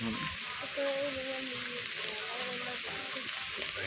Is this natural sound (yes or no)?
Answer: yes